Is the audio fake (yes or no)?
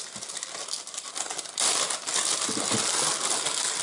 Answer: no